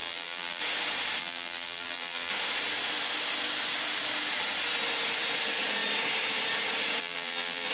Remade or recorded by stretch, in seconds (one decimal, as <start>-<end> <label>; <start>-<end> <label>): 0.0-0.6 remade; 0.6-1.2 recorded; 1.2-2.3 remade; 2.3-7.0 recorded; 7.0-7.7 remade